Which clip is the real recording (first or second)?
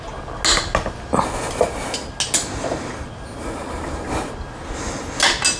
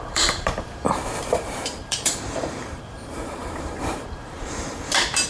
first